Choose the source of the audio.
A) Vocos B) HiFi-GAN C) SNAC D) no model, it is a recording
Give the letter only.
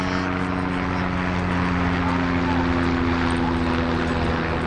D